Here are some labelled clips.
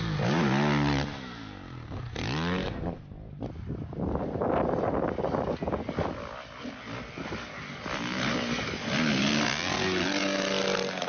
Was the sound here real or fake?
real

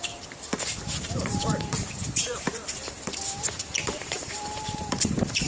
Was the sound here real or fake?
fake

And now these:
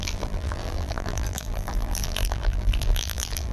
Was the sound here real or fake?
fake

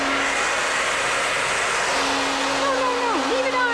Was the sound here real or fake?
real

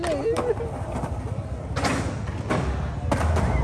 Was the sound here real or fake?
real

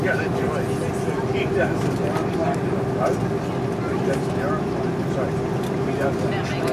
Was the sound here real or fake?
real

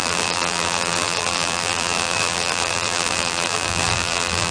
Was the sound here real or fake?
fake